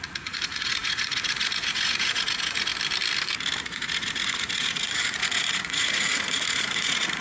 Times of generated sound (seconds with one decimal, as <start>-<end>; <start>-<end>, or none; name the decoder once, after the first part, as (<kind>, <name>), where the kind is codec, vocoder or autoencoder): 0.0-2.7 (vocoder, Vocos); 3.6-7.2